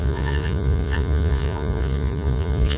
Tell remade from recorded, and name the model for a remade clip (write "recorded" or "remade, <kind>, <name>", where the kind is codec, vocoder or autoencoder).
remade, vocoder, Vocos